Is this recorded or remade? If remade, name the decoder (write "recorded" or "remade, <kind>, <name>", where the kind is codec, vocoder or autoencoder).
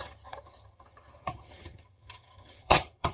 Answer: remade, vocoder, HiFi-GAN